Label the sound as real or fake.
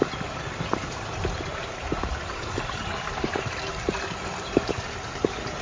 real